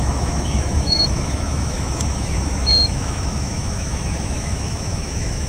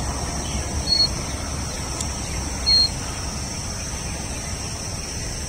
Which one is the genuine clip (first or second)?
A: second